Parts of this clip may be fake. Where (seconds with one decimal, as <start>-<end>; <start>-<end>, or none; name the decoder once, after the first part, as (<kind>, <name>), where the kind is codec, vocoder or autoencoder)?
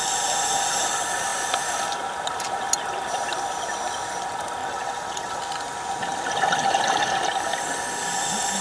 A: 4.6-5.4 (vocoder, WaveNeXt)